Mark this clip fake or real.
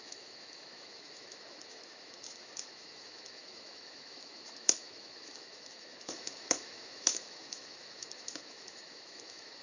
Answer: fake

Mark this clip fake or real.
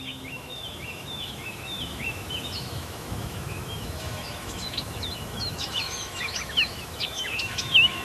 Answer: fake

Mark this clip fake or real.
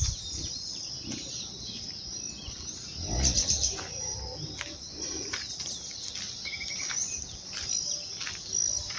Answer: real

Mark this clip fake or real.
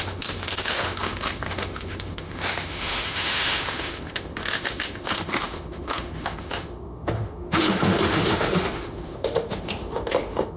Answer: fake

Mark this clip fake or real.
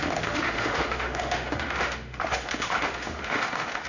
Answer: fake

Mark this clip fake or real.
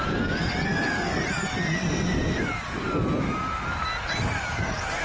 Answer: real